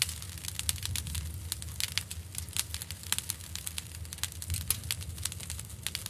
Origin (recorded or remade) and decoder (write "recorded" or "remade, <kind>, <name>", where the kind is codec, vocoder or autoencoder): recorded